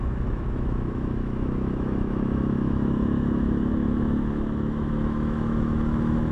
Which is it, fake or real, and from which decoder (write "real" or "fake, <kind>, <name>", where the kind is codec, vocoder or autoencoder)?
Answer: fake, autoencoder, DAC-VAE